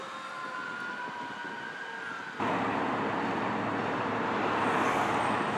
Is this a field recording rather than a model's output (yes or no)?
yes